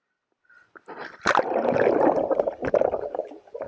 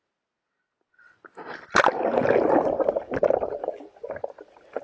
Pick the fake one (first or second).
first